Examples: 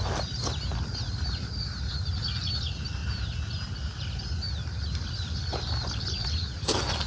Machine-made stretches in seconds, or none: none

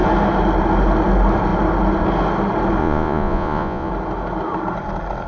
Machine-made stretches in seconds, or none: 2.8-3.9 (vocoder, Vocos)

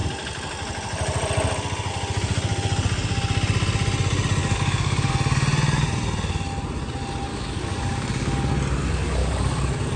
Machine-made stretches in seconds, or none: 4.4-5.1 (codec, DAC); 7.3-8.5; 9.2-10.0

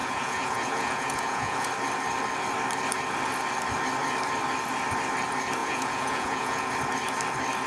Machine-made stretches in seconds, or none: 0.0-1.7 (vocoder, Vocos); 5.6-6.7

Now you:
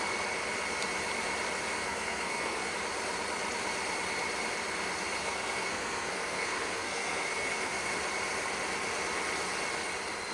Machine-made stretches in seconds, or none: 1.8-2.7 (codec, SNAC); 5.2-7.9

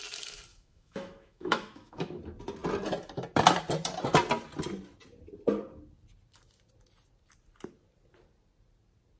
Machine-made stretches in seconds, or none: 0.5-2.2 (autoencoder, DAC-VAE)

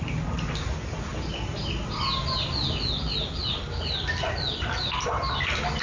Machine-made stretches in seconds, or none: none

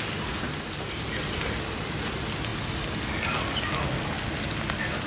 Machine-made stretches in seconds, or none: none